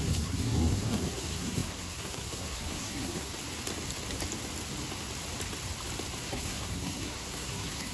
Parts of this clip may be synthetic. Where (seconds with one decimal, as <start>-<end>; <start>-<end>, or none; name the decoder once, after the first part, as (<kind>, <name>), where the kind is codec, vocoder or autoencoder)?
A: 0.0-3.3 (codec, SNAC); 6.2-7.9